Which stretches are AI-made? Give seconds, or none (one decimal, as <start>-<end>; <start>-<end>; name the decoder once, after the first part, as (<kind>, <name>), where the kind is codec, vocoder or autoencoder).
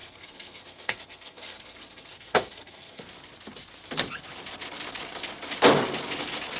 0.0-3.0 (codec, SNAC)